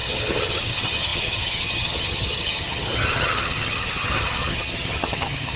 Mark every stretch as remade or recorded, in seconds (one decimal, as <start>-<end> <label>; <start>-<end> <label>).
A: 0.0-5.6 remade